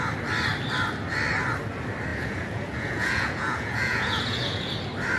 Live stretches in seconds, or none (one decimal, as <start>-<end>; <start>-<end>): 0.0-2.1; 4.7-5.2